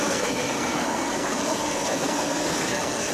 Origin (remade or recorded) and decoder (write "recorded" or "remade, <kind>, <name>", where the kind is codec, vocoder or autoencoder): remade, codec, SNAC